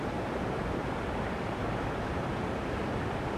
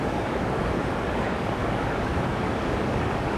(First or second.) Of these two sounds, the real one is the first